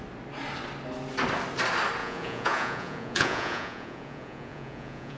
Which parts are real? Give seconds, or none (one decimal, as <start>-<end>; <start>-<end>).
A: 0.0-2.0